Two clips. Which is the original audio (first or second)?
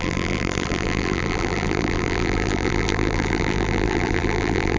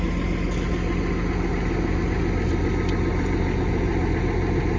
second